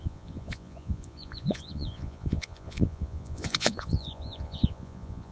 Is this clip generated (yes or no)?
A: yes